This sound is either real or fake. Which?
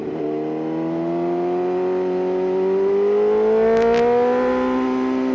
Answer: real